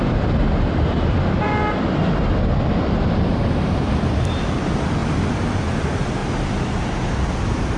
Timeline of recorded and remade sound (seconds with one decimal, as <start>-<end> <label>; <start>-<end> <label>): 0.0-6.2 remade; 6.2-7.2 recorded; 7.2-7.8 remade